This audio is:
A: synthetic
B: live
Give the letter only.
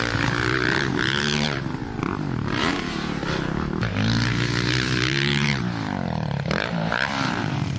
A